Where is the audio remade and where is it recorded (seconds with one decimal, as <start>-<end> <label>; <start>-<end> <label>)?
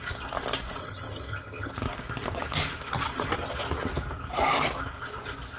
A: 0.0-0.8 recorded; 0.8-1.7 remade; 1.7-5.6 recorded